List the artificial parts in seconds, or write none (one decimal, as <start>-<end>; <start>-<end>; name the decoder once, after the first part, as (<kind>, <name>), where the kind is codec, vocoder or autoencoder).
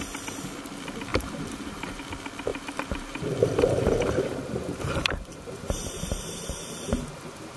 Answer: 1.1-2.0 (vocoder, BigVGAN v2); 2.5-5.6